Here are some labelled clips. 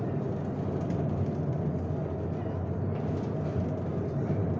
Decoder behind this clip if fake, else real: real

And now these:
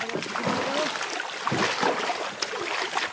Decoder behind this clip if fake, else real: real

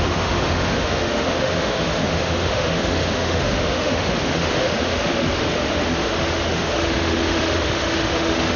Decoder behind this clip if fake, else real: fake, autoencoder, DAC-VAE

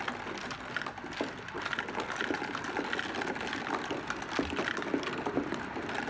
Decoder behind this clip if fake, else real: real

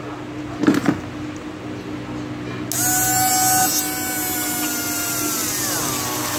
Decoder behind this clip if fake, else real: real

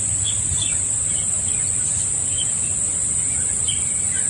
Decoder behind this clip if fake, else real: real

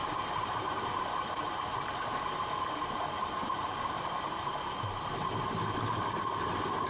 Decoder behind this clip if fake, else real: real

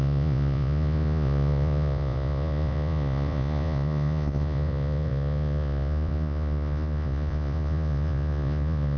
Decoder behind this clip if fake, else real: fake, vocoder, Vocos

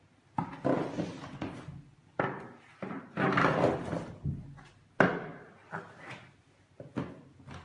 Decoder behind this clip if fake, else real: real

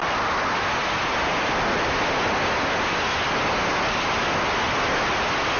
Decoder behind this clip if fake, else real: real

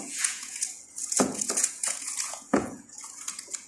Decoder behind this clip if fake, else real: fake, vocoder, Vocos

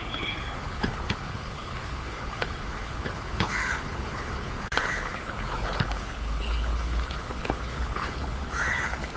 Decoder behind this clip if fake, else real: fake, codec, HILCodec